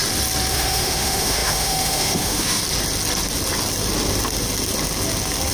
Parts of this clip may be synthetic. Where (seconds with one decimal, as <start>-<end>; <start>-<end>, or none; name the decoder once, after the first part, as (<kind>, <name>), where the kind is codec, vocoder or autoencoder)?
0.5-2.6 (autoencoder, DAC-VAE)